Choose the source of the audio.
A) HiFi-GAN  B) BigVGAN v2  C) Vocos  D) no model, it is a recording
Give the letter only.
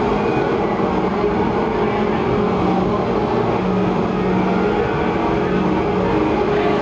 D